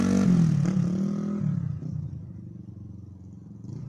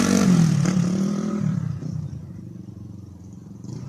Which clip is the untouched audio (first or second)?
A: first